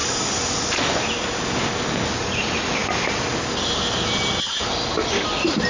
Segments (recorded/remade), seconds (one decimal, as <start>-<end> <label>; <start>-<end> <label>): 0.0-0.7 remade; 0.7-2.8 recorded; 2.8-4.2 remade; 4.2-5.7 recorded